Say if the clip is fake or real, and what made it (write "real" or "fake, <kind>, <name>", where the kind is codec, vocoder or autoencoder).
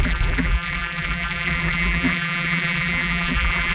fake, vocoder, BigVGAN v2